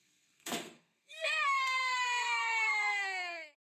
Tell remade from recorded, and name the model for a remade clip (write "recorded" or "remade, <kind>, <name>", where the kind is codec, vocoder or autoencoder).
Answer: remade, codec, SNAC